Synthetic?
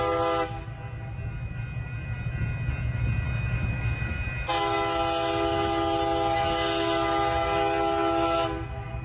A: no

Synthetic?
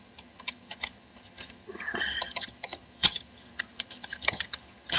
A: yes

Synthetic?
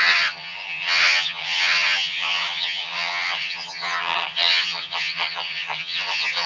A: yes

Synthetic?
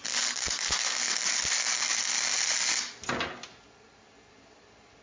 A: no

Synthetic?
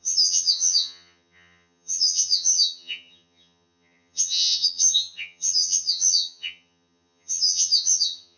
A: yes